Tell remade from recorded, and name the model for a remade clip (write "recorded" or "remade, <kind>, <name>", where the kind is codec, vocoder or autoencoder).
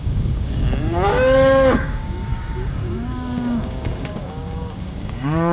remade, codec, DAC